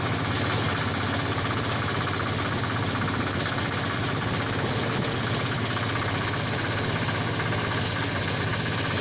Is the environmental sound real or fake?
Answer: real